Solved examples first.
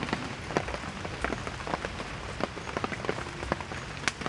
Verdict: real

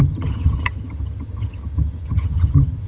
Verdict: fake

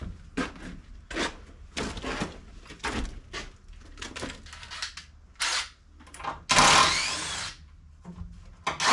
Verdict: real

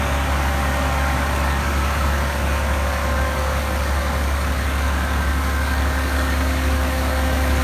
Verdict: fake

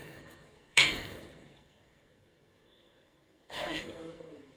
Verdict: fake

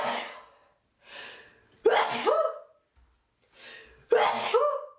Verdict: real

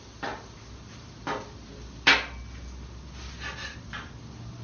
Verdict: real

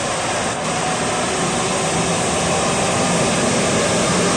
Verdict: real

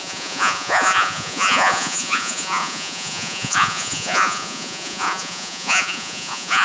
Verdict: fake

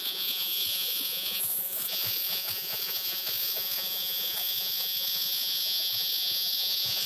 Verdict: fake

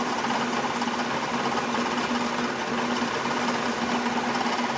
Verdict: real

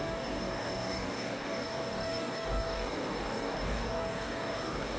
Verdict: fake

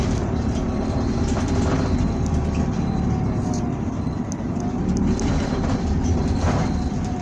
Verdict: fake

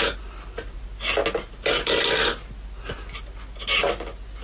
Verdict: real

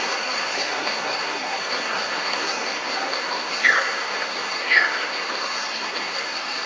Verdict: fake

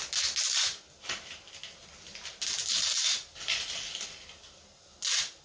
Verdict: real